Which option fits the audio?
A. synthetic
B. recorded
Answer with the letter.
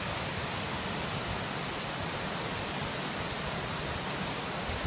B